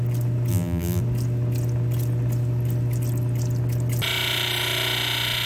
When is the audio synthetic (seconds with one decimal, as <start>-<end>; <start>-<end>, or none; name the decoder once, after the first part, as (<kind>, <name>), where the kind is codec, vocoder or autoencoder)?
0.5-1.0 (vocoder, BigVGAN v2)